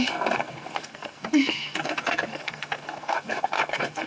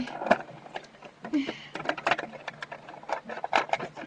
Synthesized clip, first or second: first